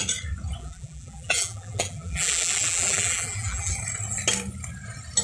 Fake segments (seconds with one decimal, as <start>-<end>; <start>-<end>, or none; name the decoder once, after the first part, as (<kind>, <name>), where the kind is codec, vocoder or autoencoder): 0.6-3.7 (vocoder, BigVGAN v2)